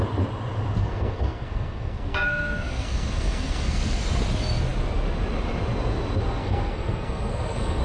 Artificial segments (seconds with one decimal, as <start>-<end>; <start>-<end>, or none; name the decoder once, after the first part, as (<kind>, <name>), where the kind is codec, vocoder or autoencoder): 0.8-4.0 (codec, SNAC); 6.4-7.8